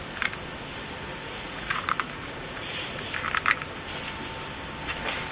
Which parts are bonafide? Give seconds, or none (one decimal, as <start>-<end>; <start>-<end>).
0.0-1.1; 3.1-5.3